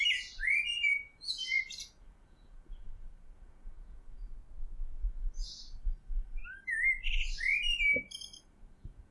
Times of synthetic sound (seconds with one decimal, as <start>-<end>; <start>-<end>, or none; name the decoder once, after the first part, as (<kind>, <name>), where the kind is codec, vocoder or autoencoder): 0.0-4.4 (vocoder, Vocos); 5.0-6.4; 8.4-9.1